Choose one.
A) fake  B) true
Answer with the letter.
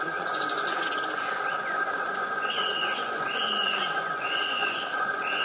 A